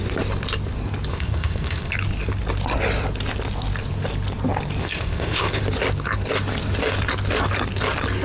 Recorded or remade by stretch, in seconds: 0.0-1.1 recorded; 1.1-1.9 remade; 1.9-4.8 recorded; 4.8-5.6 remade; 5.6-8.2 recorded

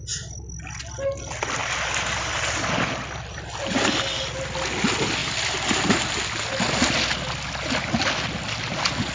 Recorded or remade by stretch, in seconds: 0.0-9.1 recorded